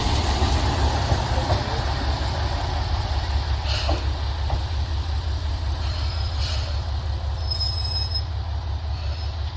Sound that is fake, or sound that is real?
real